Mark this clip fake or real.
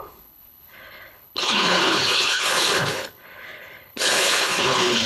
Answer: fake